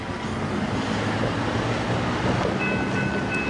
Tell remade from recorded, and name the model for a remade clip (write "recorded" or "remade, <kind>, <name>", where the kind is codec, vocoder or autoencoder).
recorded